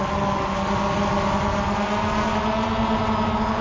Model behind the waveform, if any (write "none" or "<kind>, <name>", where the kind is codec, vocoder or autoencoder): none